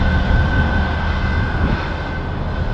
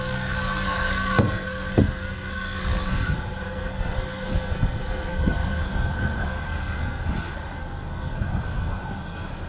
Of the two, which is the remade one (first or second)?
second